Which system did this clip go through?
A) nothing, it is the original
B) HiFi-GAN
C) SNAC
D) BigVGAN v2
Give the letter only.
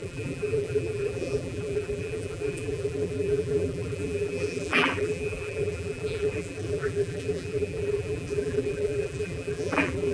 D